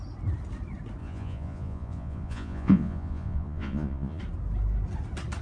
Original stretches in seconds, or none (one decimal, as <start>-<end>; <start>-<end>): 0.0-1.0; 4.2-5.4